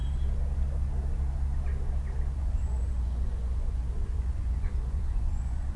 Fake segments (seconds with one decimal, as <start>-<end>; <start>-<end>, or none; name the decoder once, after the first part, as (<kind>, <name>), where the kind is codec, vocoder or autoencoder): 2.3-5.8 (vocoder, Vocos)